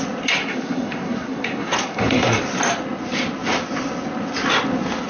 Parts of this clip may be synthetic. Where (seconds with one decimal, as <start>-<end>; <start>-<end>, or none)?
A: 0.4-2.4